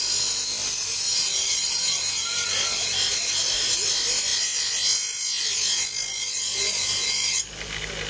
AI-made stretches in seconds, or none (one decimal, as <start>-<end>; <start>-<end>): 3.1-3.7